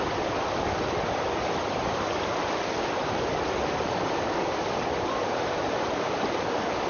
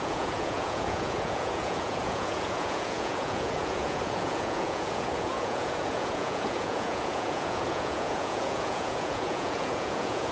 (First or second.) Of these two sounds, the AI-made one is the second